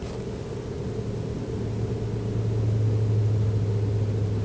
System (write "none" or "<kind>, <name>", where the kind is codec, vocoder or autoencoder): none